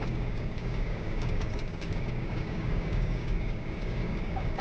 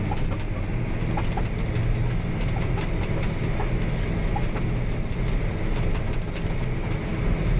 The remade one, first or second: first